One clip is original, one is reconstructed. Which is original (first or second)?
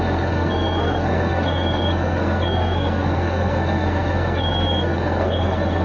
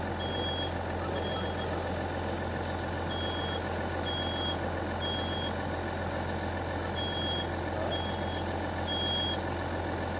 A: second